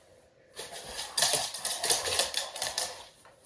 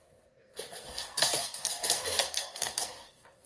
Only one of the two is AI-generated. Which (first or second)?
second